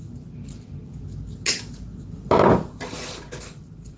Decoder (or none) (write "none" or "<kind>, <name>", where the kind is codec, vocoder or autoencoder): none